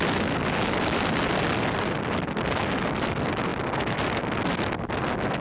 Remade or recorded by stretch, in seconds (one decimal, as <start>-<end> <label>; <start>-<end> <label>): 0.0-5.4 recorded

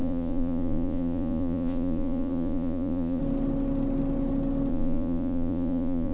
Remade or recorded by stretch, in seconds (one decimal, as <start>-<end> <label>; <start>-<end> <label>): 0.0-3.2 remade; 3.2-4.7 recorded; 4.7-6.1 remade